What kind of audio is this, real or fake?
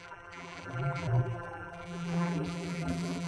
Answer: fake